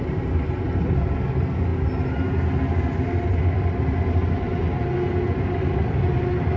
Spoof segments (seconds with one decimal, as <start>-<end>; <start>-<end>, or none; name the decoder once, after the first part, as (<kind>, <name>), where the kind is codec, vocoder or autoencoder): none